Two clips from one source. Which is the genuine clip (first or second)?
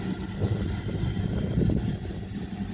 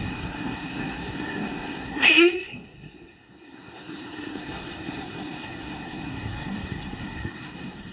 first